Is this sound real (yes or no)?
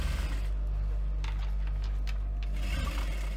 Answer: yes